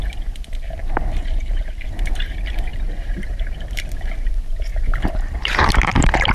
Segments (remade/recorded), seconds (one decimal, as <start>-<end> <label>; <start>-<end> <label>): 0.0-0.8 recorded; 0.8-1.8 remade; 1.8-2.7 recorded; 2.7-4.3 remade; 4.3-4.7 recorded; 4.7-6.3 remade